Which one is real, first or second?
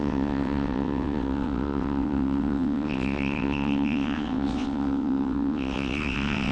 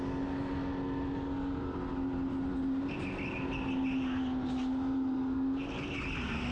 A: second